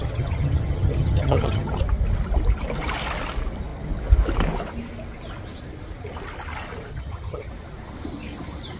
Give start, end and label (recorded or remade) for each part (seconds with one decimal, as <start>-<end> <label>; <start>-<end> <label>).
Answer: 0.0-1.8 remade; 1.8-6.9 recorded; 6.9-7.5 remade; 7.5-8.8 recorded